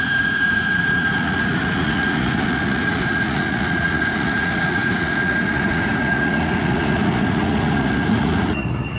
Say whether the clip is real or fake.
fake